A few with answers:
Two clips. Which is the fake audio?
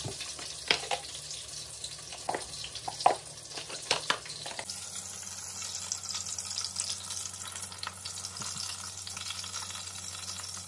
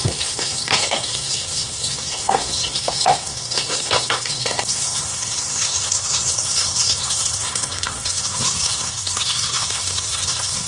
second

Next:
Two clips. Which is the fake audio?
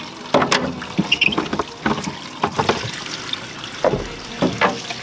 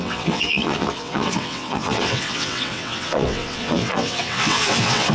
second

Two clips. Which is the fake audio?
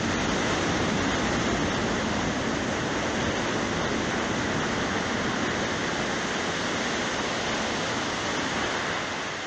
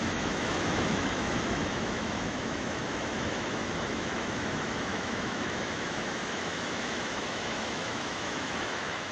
second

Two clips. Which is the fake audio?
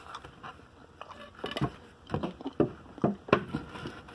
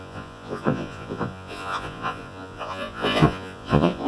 second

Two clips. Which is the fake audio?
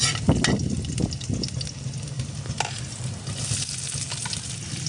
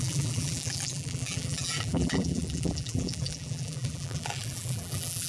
second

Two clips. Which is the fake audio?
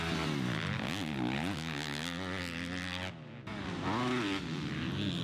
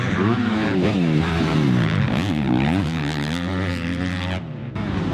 second